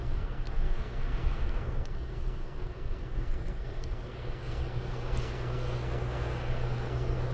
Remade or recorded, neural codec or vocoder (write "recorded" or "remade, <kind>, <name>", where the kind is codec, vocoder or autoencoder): remade, codec, SNAC